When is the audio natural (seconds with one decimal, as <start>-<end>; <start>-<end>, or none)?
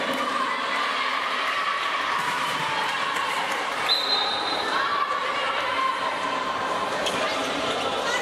none